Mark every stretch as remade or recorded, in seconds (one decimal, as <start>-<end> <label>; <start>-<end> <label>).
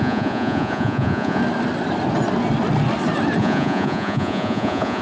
0.0-1.4 remade; 1.4-3.4 recorded; 3.4-5.0 remade